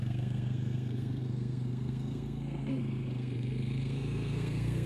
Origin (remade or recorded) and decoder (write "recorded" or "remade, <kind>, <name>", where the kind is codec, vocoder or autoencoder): remade, codec, SNAC